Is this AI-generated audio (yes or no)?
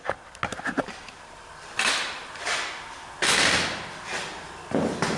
no